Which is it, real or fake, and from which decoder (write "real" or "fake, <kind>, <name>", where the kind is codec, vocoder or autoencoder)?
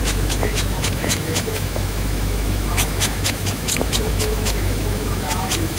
fake, autoencoder, DAC-VAE